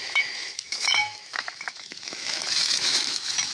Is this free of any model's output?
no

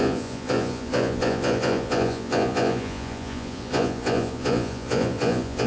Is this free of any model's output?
no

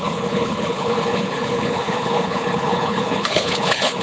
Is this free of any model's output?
no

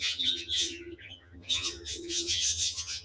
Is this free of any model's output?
no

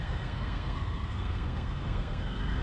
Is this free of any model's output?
no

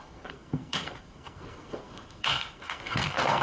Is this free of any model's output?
no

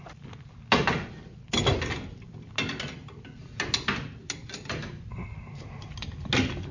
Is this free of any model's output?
yes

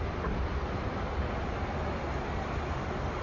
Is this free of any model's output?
yes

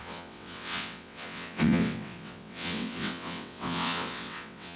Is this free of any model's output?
no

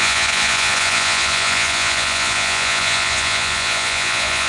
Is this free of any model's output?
no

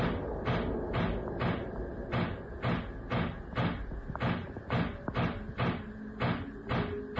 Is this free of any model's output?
yes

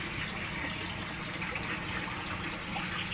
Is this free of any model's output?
yes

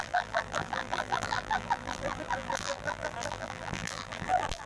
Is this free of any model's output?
no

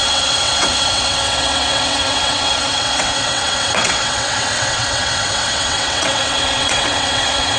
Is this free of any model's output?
no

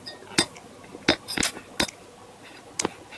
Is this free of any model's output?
yes